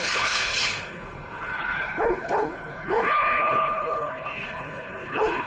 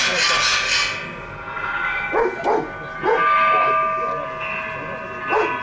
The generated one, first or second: first